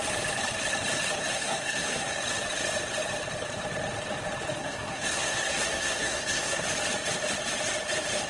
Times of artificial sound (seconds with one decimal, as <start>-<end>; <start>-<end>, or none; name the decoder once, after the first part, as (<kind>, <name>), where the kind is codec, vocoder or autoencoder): 1.3-2.2 (codec, SNAC); 4.6-6.6